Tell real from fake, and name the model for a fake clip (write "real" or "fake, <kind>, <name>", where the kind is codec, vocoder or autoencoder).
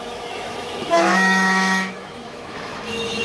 fake, autoencoder, DAC-VAE